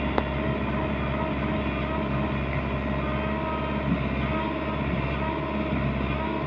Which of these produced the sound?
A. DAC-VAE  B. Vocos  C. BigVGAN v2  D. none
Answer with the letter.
D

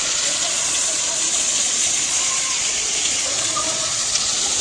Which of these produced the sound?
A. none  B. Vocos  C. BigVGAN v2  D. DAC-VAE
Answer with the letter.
B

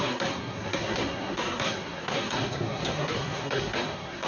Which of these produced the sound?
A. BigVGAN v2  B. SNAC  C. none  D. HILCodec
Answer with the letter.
B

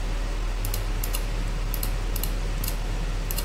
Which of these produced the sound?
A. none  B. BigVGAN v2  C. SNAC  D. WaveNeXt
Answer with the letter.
A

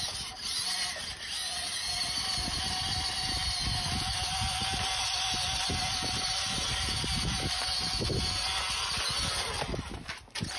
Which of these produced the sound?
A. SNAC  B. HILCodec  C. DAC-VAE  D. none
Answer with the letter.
D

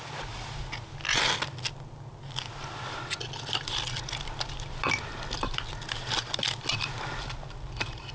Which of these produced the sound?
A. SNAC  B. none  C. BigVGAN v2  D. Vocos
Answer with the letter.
B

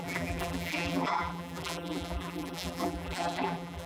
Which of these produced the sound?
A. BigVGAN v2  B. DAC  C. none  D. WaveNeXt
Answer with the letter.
A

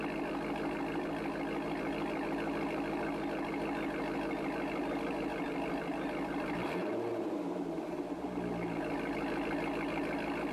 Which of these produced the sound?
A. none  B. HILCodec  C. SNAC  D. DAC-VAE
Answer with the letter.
A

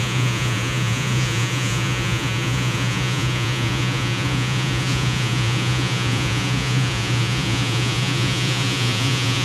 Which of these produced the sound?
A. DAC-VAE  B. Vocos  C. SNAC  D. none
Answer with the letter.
B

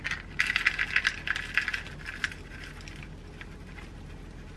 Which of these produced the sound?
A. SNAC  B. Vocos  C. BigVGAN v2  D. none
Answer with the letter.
D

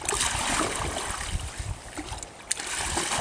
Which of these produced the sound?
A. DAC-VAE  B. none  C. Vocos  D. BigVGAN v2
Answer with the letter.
B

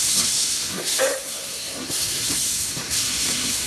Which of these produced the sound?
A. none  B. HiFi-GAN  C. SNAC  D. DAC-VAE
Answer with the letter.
C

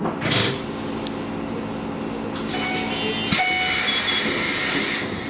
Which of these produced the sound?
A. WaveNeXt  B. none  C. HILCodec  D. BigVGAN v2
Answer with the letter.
B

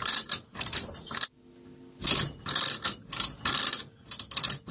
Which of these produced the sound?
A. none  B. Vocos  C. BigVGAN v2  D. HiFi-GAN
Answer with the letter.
A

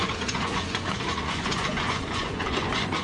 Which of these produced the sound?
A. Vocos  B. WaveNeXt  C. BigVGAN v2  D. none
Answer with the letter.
A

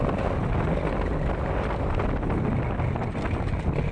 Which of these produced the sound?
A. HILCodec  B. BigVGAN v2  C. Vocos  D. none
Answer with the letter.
D